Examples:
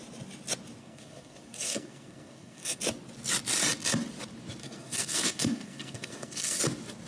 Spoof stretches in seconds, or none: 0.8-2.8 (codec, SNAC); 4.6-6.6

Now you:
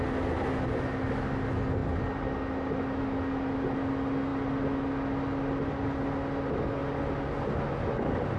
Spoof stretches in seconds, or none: none

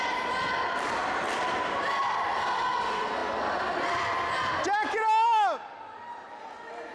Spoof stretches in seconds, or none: 1.0-1.9 (vocoder, BigVGAN v2)

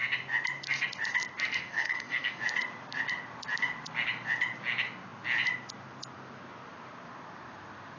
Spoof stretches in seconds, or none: 1.6-2.4 (codec, SNAC)

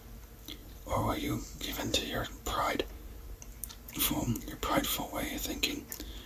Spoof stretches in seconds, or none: 0.6-2.7 (vocoder, BigVGAN v2)

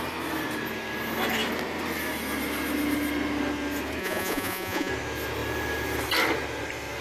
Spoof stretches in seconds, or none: 4.0-4.9 (vocoder, Vocos)

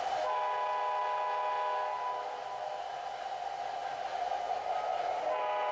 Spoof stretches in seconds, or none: none

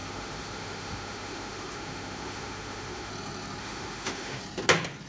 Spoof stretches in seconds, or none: 0.0-3.1 (autoencoder, DAC-VAE); 3.6-4.4